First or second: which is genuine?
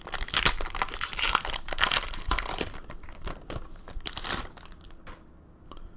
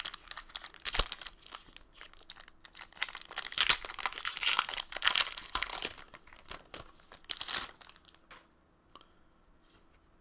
second